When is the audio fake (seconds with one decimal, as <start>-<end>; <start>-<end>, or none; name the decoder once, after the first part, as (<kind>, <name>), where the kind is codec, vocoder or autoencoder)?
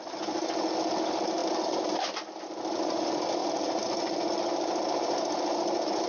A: none